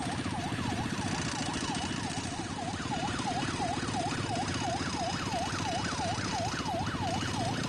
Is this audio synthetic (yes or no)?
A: no